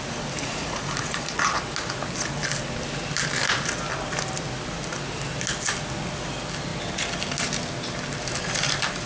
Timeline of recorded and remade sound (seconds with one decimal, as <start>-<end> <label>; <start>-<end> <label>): 0.0-0.4 recorded; 0.4-1.5 remade; 1.5-9.1 recorded